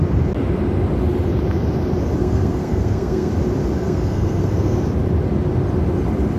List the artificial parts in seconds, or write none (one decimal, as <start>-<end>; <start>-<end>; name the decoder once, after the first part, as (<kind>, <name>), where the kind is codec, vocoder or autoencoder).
2.2-3.3 (codec, SNAC); 3.8-4.8